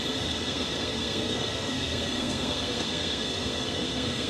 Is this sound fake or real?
fake